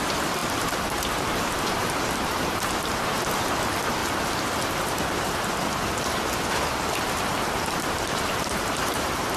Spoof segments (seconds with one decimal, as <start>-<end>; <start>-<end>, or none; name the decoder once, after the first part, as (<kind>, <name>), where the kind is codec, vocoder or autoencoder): 0.0-4.0 (vocoder, BigVGAN v2); 7.6-9.4

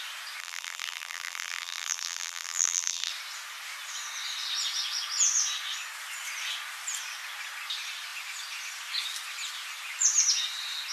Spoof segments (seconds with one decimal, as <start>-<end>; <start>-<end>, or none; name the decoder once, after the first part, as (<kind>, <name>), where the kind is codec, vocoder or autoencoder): 0.4-3.1 (vocoder, BigVGAN v2)

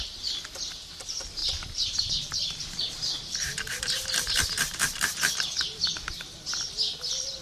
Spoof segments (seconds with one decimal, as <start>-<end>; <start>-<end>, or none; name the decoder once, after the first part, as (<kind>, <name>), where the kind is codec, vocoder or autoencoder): 1.4-5.8 (vocoder, BigVGAN v2)

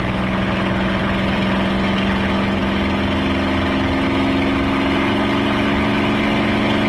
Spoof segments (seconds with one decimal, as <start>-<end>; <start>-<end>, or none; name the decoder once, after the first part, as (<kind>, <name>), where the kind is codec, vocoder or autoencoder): 1.0-2.1 (vocoder, BigVGAN v2)

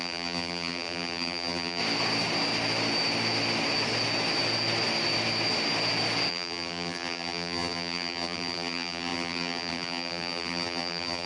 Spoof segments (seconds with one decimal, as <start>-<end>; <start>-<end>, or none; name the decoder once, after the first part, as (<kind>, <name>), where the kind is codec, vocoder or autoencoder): 0.0-1.8 (vocoder, BigVGAN v2); 6.3-11.3

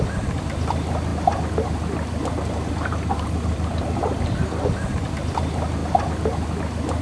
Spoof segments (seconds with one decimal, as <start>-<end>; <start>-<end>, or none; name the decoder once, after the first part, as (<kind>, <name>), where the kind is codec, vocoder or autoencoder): 0.0-5.8 (vocoder, BigVGAN v2); 6.6-7.0

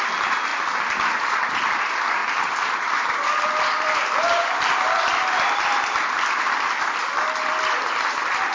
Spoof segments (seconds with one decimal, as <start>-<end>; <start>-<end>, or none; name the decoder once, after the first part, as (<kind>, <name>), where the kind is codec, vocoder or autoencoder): 0.5-1.1 (vocoder, BigVGAN v2); 2.2-6.4; 7.0-7.5